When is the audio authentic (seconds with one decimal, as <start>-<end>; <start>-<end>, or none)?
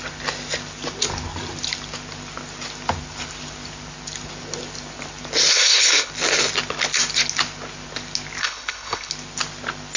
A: 0.0-5.5; 6.1-8.4; 9.1-10.0